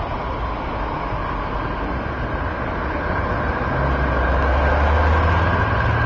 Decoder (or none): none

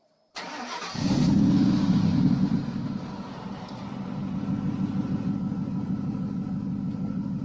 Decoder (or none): none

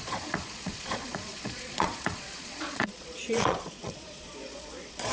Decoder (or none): vocoder, Vocos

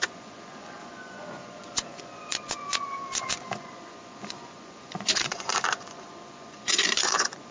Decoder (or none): vocoder, Vocos